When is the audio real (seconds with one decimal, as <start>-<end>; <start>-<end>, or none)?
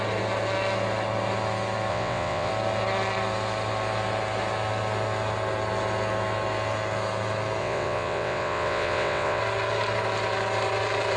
0.0-1.9; 2.5-7.6; 9.4-11.2